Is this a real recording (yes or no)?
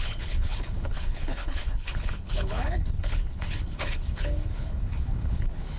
no